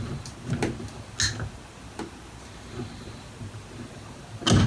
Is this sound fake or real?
real